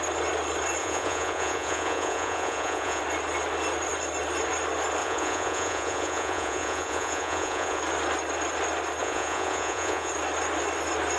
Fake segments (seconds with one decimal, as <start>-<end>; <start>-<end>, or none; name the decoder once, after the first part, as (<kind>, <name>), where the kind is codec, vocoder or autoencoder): 0.8-3.0 (vocoder, Vocos); 5.0-7.8; 9.0-10.1